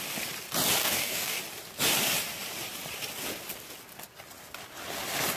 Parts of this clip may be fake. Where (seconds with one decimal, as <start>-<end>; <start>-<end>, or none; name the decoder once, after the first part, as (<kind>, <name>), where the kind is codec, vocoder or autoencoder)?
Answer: 0.8-1.4 (codec, DAC)